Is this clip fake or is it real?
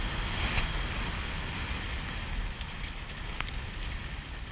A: real